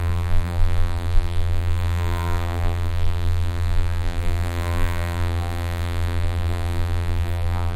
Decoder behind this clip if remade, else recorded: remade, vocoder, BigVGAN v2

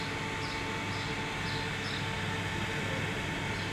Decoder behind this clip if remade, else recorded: recorded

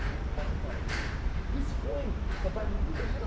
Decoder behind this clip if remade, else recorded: remade, vocoder, BigVGAN v2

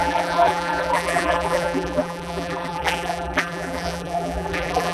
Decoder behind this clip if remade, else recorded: remade, vocoder, BigVGAN v2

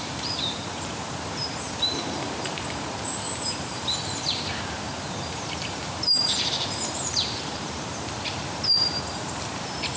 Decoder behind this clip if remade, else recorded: remade, vocoder, BigVGAN v2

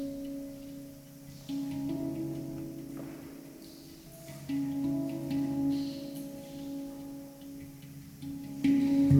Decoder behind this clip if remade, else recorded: recorded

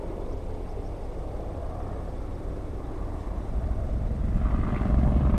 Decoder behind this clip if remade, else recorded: remade, vocoder, BigVGAN v2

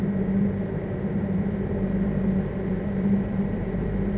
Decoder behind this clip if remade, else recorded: remade, vocoder, BigVGAN v2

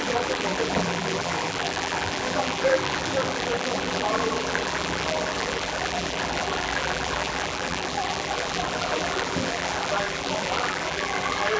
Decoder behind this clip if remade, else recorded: remade, vocoder, BigVGAN v2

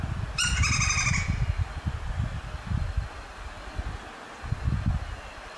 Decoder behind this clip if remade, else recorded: recorded